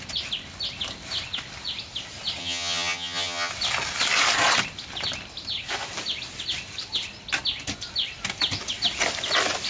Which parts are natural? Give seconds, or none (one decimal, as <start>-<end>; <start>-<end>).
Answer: 0.0-2.4; 3.5-9.7